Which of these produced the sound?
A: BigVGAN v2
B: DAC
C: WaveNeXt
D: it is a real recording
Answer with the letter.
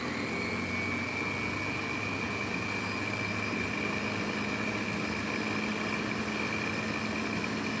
D